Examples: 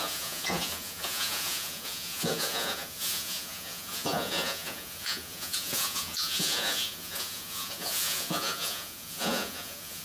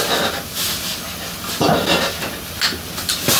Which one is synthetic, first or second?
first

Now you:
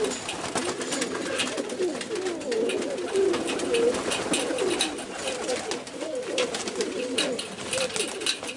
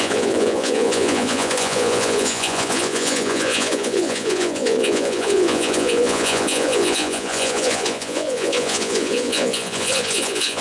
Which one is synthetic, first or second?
second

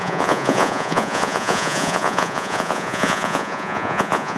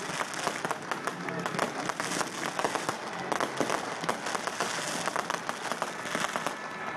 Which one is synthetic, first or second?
first